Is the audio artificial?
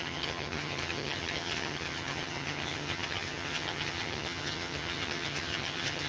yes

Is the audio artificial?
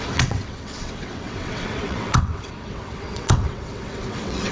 yes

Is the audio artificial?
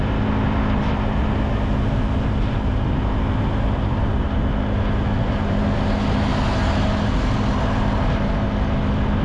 no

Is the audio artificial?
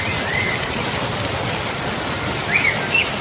no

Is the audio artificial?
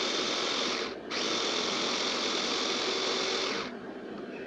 no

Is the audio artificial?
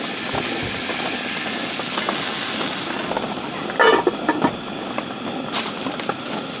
no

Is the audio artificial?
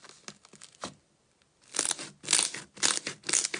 no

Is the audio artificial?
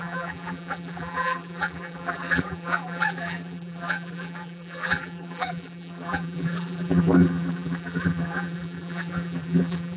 yes